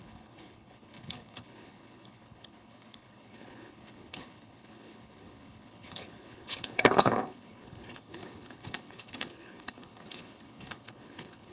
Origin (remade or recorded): remade